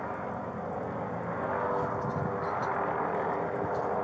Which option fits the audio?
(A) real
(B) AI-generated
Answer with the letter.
A